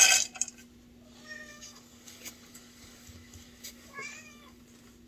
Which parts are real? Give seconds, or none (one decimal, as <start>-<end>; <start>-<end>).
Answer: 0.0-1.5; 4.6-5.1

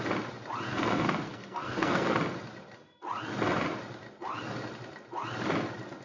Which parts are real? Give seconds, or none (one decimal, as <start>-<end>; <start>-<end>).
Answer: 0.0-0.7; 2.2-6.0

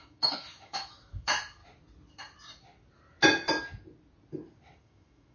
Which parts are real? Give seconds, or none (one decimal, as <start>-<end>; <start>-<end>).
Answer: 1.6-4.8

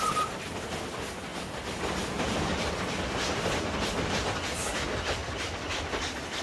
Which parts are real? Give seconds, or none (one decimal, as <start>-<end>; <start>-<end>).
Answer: 0.0-6.4

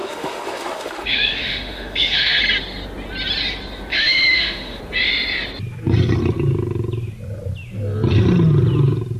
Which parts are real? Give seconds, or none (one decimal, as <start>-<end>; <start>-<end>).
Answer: 2.4-3.9; 4.8-9.2

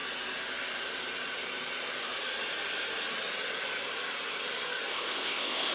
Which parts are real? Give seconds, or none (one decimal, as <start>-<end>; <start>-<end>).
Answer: 0.0-4.9

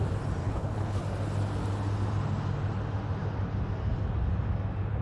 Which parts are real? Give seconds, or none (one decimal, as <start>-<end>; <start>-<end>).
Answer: 0.0-0.4; 1.0-5.0

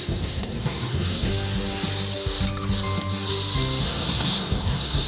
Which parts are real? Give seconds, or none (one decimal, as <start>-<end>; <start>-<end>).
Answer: 1.3-3.8